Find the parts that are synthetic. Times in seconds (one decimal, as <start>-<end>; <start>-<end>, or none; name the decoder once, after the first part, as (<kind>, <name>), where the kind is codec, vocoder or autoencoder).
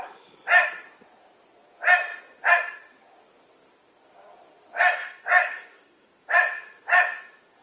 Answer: 5.0-6.1 (codec, DAC)